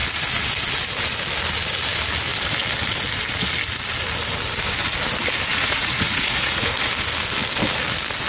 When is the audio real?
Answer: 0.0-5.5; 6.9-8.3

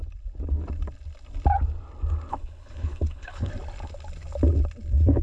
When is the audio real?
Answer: 0.0-2.3; 3.5-5.2

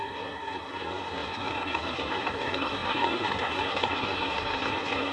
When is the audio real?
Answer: none

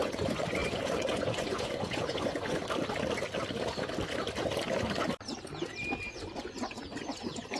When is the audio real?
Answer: 2.6-6.1